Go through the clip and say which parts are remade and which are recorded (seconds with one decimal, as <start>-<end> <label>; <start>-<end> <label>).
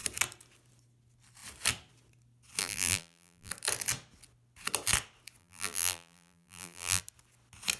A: 0.0-2.6 recorded; 2.6-3.5 remade; 3.5-5.4 recorded; 5.4-7.0 remade; 7.0-7.8 recorded